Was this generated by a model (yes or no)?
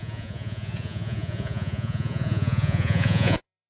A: yes